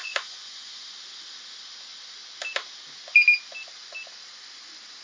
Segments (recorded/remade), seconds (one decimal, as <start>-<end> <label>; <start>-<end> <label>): 0.0-0.8 remade; 0.8-5.0 recorded